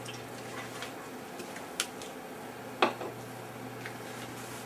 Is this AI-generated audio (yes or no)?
no